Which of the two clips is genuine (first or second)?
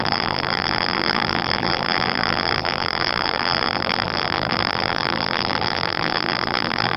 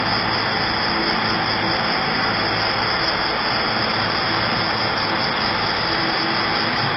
second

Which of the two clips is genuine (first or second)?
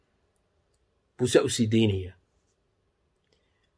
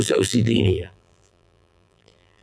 first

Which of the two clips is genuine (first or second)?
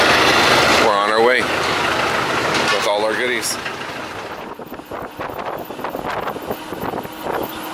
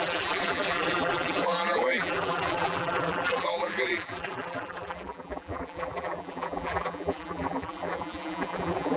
first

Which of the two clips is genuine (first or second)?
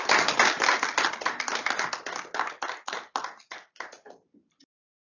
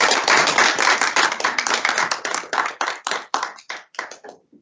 first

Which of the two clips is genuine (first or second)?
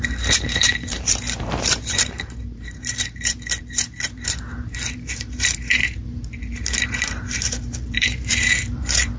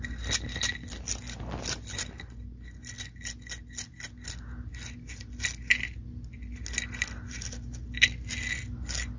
second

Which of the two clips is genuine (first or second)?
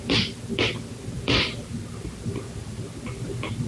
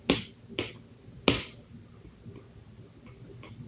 second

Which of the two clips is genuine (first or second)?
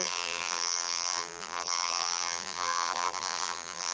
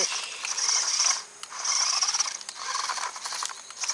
second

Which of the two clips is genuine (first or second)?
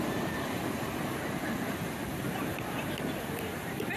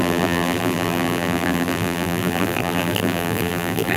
first